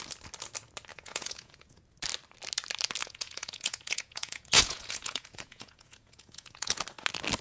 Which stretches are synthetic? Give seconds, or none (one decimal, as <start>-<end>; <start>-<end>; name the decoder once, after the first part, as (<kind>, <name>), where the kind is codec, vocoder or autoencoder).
0.9-1.8 (vocoder, Vocos); 3.0-6.8